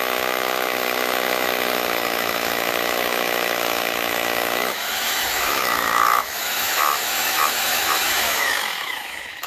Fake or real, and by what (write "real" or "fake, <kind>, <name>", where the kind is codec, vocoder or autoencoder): fake, autoencoder, DAC-VAE